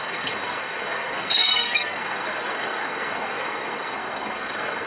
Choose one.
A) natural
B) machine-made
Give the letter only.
B